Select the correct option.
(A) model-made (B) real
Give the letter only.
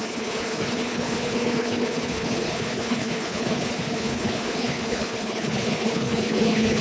A